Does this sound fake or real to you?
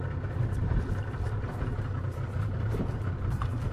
fake